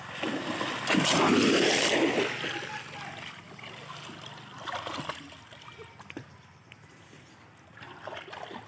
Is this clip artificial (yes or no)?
no